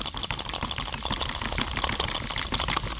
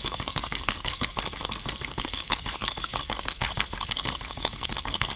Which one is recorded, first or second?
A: first